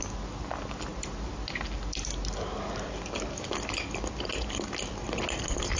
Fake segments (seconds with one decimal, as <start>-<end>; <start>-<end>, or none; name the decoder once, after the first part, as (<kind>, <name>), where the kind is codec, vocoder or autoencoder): none